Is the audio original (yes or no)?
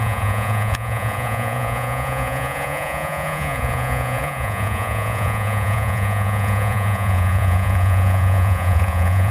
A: no